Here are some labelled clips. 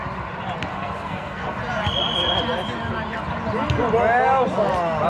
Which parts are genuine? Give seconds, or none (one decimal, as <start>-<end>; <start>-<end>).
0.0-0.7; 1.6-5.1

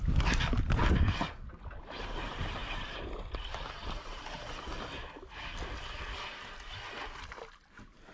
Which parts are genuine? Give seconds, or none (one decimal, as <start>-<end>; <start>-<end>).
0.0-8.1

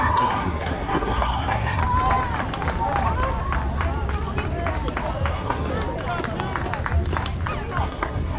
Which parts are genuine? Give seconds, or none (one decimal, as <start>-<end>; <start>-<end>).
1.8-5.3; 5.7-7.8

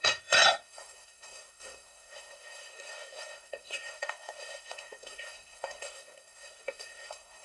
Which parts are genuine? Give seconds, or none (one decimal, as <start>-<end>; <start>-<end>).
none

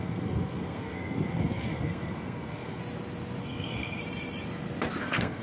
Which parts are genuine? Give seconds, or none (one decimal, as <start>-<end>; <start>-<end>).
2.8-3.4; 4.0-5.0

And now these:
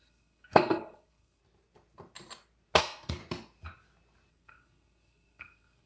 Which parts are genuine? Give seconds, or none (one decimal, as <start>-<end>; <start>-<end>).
1.4-2.8; 3.2-4.3

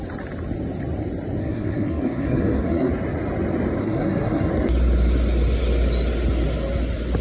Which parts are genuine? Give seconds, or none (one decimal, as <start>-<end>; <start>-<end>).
0.0-1.4; 2.9-3.8; 4.5-7.2